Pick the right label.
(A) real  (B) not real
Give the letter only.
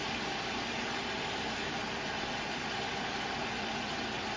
A